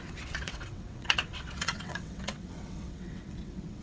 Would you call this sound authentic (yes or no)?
no